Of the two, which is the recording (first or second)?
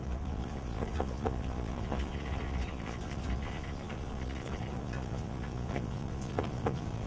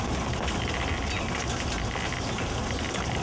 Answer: second